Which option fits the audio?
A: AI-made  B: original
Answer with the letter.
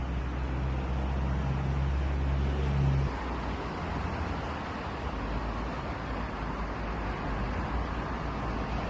B